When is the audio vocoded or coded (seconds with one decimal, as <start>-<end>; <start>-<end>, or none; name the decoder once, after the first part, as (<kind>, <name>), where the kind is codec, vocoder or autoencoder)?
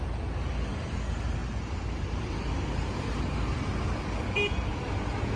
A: none